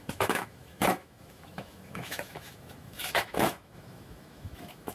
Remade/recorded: remade